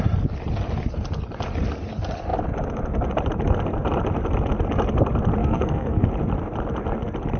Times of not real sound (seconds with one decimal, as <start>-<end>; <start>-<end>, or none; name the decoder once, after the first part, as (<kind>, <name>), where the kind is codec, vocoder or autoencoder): 5.4-6.1 (codec, SNAC)